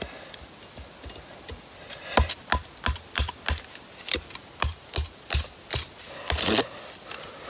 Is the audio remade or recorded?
recorded